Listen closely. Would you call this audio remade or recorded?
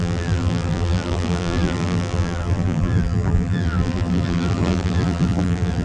remade